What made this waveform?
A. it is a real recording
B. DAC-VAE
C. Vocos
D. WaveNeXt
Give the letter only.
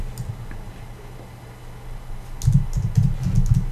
A